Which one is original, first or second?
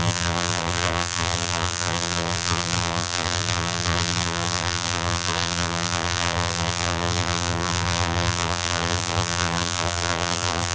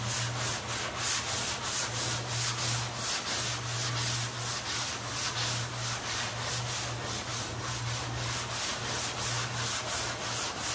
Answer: second